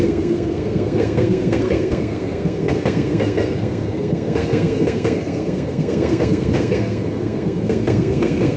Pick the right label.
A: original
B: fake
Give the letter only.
B